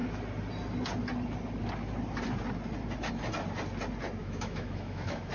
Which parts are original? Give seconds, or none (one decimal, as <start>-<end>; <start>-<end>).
0.0-4.2